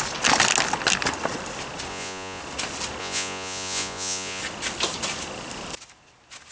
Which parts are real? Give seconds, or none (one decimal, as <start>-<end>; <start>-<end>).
0.0-1.9; 2.4-3.0; 4.4-6.5